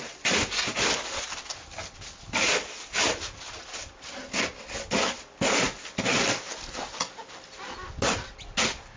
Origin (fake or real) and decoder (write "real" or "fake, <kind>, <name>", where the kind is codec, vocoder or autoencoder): real